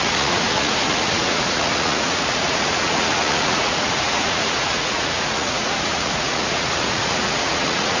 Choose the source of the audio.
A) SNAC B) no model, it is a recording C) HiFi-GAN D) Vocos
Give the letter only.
D